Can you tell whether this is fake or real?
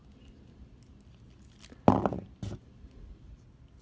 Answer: real